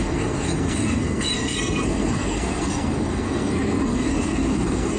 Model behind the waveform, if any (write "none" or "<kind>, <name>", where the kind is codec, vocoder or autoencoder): codec, SNAC